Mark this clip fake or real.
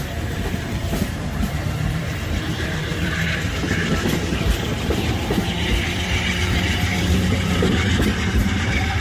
fake